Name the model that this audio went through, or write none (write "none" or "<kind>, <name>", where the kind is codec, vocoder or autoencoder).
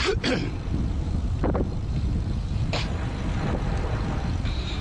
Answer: vocoder, BigVGAN v2